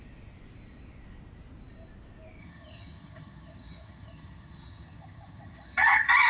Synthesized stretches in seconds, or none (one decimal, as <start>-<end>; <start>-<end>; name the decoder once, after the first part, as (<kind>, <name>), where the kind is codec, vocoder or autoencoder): 2.4-6.3 (vocoder, HiFi-GAN)